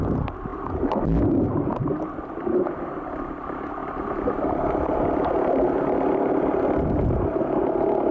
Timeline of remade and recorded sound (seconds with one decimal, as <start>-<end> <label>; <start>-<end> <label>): 0.0-8.1 recorded